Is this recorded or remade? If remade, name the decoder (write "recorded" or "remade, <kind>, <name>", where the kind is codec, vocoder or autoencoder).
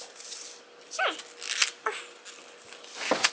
recorded